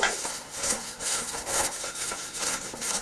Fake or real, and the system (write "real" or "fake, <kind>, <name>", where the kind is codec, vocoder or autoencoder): fake, codec, SNAC